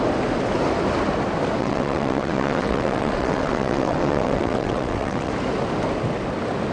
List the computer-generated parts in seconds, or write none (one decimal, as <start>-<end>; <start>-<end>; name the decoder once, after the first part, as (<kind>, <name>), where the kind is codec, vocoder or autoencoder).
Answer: 1.6-5.3 (vocoder, WaveNeXt)